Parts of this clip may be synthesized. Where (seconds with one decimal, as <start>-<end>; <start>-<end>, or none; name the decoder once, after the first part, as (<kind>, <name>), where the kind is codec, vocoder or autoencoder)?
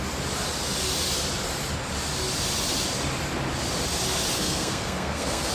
4.4-5.5 (codec, SNAC)